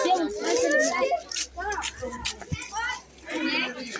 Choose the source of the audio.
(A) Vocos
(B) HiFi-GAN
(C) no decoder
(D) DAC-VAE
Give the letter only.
C